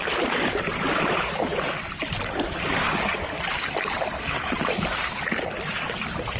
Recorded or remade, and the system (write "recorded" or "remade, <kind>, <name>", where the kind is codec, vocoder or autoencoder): recorded